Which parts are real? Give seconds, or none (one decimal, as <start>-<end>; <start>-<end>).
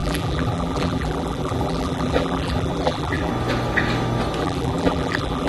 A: 3.3-4.4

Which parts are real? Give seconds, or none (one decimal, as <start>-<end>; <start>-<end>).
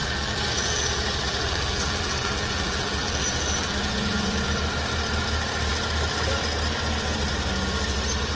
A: 4.3-8.4